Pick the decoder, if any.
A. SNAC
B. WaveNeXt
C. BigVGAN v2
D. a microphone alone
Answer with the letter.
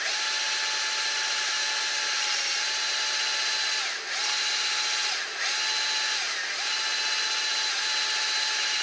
D